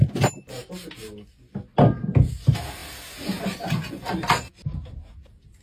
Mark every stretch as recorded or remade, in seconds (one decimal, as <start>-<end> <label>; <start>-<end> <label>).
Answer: 0.0-5.6 recorded